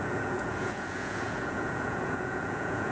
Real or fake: fake